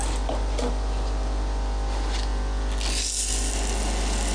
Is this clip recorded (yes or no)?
yes